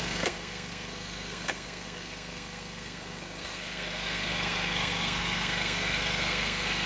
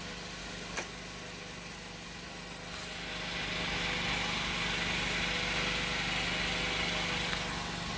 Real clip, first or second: second